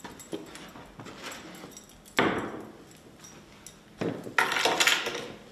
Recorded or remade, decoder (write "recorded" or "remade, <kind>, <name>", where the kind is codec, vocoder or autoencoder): recorded